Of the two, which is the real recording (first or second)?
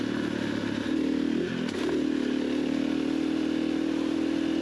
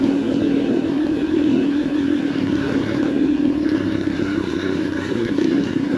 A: first